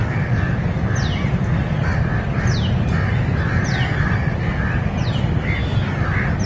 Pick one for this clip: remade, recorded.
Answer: recorded